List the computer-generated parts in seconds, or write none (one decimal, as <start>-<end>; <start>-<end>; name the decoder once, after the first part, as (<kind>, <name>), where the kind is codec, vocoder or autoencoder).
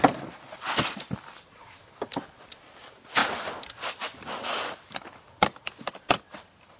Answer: 0.0-3.2 (vocoder, BigVGAN v2); 3.9-6.8